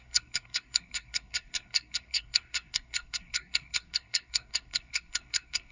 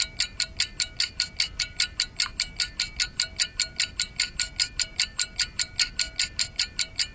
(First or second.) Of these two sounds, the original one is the second